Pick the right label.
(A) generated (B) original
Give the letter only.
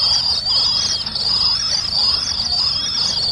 B